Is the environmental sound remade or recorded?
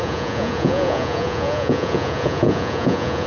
remade